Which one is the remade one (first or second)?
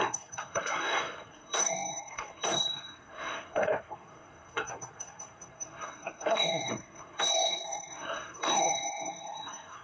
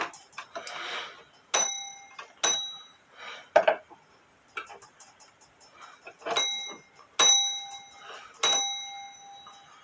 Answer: first